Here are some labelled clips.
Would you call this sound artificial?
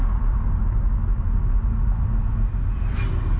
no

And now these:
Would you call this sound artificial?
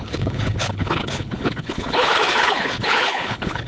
yes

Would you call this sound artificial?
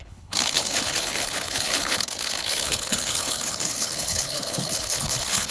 yes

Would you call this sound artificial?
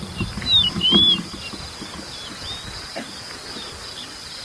no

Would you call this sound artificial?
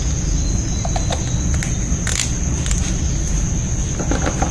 no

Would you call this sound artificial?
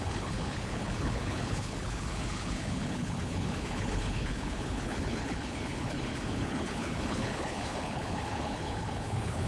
yes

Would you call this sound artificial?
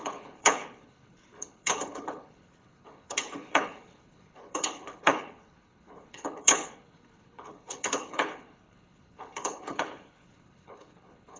yes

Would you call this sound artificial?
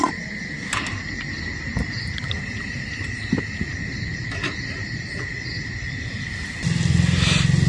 no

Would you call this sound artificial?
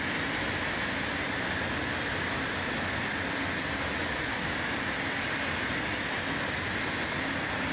no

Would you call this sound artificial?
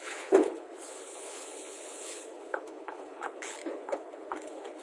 yes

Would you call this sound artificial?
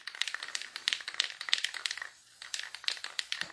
no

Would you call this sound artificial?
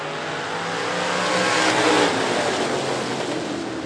no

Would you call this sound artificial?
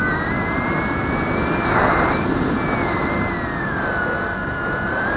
no